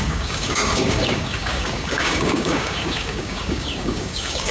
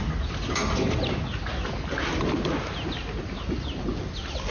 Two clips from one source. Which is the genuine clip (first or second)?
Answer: second